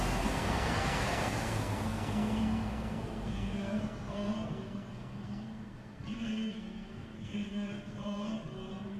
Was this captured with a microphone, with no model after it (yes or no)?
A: no